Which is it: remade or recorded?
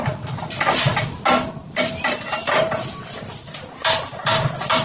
recorded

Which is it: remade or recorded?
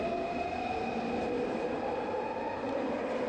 recorded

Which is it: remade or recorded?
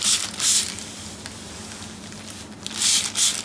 recorded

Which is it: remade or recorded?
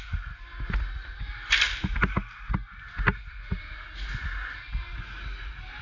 recorded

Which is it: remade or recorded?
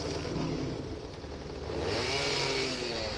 recorded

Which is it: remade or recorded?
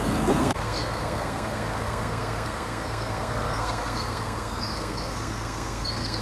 remade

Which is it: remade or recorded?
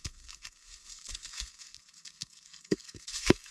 remade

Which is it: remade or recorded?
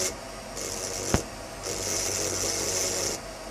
recorded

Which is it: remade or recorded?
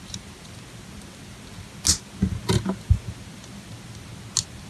recorded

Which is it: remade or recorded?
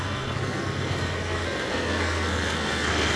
remade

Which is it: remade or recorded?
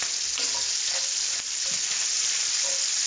recorded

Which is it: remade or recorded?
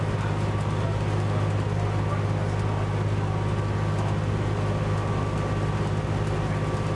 recorded